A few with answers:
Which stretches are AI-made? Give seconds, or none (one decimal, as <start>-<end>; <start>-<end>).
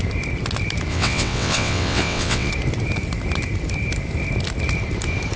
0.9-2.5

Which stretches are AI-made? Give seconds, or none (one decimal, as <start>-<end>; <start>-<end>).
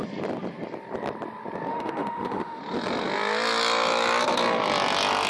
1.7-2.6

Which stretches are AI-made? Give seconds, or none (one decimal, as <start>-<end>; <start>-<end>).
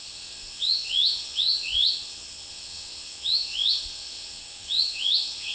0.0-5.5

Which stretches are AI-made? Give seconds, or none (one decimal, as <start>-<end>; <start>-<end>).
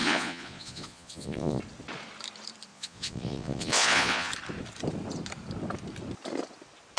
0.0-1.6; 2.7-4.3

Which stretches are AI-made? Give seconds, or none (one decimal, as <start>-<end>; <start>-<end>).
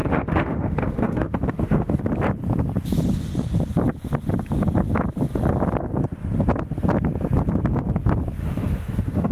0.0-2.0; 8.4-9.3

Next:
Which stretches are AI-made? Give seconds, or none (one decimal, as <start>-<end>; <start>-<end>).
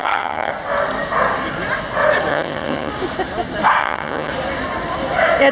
0.0-0.5; 2.3-2.9; 3.8-4.3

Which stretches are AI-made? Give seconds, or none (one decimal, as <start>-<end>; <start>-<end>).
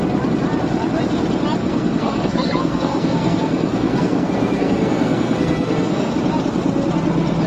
1.6-6.1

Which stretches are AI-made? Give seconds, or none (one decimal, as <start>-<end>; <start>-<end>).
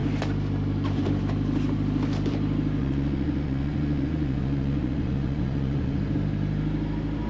2.8-6.0